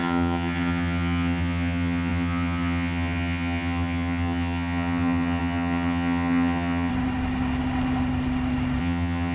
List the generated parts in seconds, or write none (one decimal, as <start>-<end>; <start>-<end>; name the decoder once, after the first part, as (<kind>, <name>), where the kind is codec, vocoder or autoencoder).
0.0-6.9 (vocoder, HiFi-GAN); 8.8-9.3